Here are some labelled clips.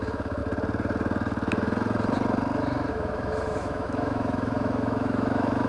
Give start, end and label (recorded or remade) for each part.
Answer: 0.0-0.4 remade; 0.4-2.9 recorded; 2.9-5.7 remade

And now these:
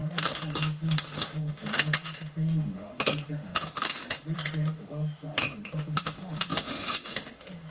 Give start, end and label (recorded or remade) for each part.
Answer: 0.0-7.7 remade

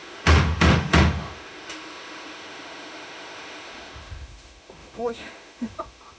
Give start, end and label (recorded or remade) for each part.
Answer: 0.0-6.2 remade

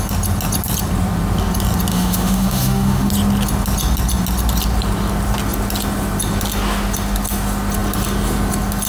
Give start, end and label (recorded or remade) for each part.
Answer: 0.0-1.9 recorded; 1.9-3.1 remade; 3.1-8.9 recorded

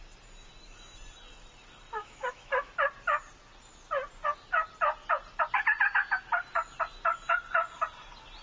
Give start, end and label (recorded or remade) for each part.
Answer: 0.0-2.0 recorded; 2.0-2.7 remade; 2.7-8.4 recorded

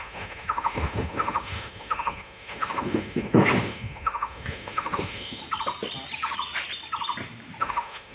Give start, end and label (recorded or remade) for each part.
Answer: 0.0-5.4 remade; 5.4-7.6 recorded; 7.6-8.1 remade

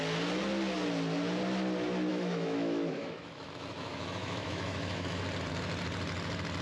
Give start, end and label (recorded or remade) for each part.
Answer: 0.0-2.1 recorded; 2.1-5.2 remade; 5.2-6.6 recorded